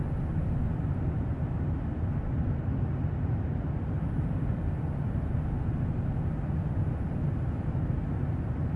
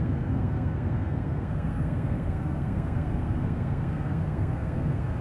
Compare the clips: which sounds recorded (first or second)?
first